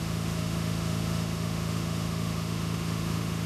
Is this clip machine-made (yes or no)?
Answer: yes